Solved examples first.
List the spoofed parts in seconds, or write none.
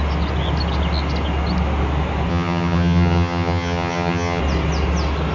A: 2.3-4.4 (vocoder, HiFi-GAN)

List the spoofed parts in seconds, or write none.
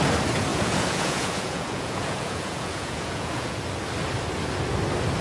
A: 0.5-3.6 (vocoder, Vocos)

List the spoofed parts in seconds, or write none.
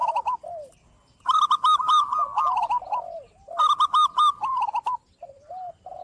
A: none